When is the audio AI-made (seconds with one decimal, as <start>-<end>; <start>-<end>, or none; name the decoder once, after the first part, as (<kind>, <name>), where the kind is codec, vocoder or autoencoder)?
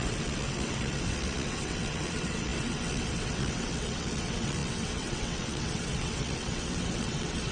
0.0-7.5 (vocoder, WaveNeXt)